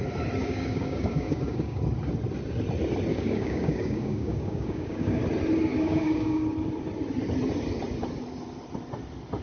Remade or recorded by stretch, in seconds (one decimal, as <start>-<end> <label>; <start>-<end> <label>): 0.0-0.4 recorded; 0.4-1.8 remade; 1.8-3.1 recorded; 3.1-5.2 remade; 5.2-5.7 recorded; 5.7-6.4 remade; 6.4-9.4 recorded